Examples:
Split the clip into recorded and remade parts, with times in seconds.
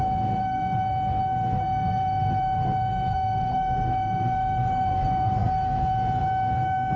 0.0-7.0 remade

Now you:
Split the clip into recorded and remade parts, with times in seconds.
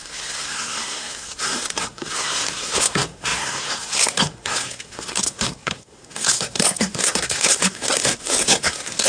0.0-9.1 remade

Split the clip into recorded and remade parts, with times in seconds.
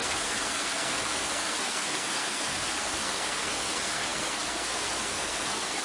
0.0-5.8 remade